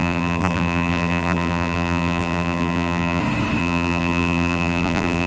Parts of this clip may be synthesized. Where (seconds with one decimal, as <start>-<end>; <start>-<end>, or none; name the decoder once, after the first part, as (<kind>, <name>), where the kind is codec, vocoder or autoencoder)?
0.0-3.2 (vocoder, BigVGAN v2); 3.6-5.3